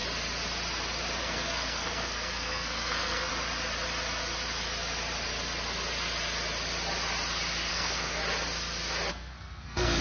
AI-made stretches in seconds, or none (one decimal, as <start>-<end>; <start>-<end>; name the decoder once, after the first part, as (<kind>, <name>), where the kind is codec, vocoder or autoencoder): 1.2-3.3 (codec, SNAC); 7.7-8.2; 9.1-10.0